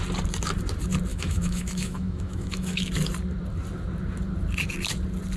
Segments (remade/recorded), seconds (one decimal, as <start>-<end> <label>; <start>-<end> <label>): 0.0-1.1 recorded; 1.1-2.9 remade; 2.9-5.4 recorded